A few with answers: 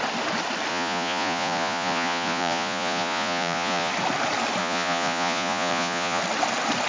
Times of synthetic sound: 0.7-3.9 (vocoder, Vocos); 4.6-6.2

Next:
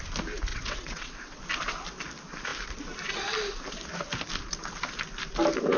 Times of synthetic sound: 0.5-1.4 (vocoder, WaveNeXt)

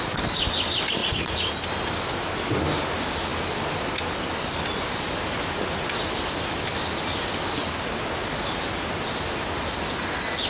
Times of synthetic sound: 1.0-1.5 (vocoder, Vocos)

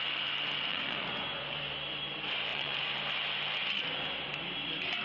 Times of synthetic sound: 0.7-1.6 (vocoder, Vocos); 2.5-3.0

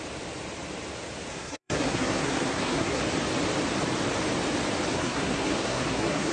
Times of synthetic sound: 1.3-3.0 (codec, SNAC); 4.9-6.3

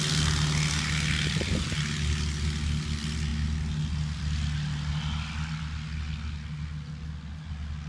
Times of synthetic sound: none